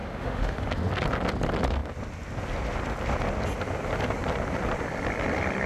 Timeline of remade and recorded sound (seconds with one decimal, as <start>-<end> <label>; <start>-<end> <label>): 0.0-0.7 remade; 0.7-5.7 recorded